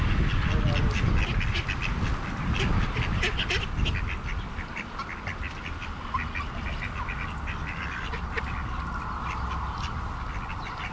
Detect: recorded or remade recorded